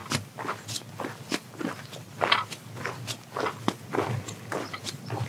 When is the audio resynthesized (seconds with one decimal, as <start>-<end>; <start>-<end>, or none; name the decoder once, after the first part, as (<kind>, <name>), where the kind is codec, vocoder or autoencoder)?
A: none